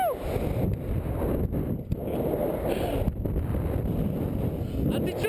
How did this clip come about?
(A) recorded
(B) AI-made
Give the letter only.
A